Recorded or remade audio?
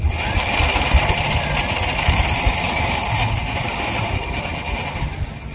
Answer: recorded